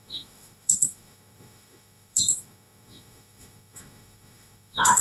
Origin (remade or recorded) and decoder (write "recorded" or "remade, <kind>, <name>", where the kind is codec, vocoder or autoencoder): remade, autoencoder, DAC-VAE